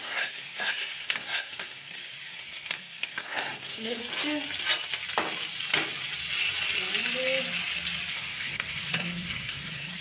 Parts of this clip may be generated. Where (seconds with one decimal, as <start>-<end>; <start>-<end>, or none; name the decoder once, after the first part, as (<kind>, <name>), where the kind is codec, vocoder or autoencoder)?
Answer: 0.0-4.0 (codec, SNAC); 8.1-10.0